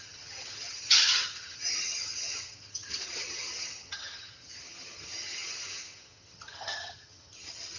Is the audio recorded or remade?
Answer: remade